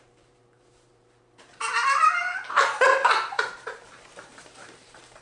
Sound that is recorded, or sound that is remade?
remade